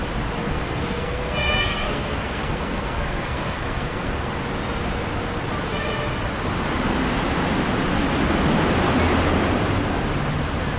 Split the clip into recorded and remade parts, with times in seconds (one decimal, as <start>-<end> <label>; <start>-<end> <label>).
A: 0.0-0.4 recorded; 0.4-4.3 remade; 4.3-10.8 recorded